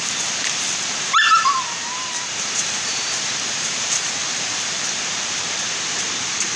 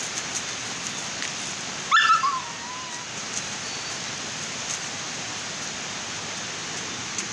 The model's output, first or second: first